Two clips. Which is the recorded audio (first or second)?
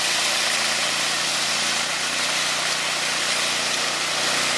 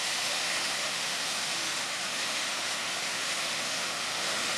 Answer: first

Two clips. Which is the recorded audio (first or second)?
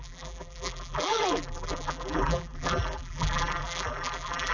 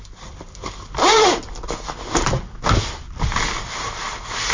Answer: second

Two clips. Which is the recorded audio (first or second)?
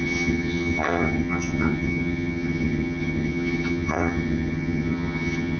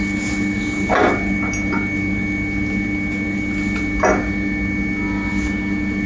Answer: second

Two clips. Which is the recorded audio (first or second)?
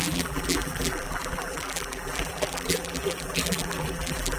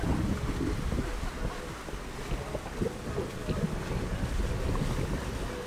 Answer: second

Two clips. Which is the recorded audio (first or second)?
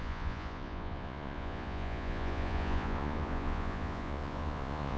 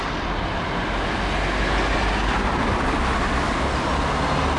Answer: second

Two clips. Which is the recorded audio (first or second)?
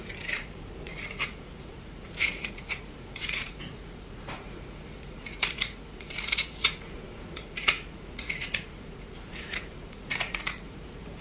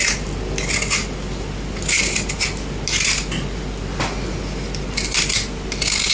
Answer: second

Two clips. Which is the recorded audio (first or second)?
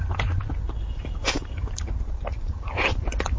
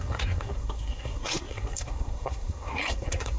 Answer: first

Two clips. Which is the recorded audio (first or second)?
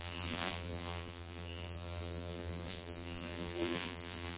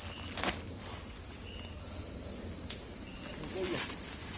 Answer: second